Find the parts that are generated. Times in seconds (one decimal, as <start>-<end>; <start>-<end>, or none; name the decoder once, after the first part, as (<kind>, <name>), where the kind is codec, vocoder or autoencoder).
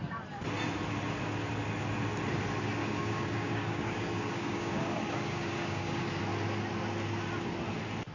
2.8-6.2 (codec, DAC)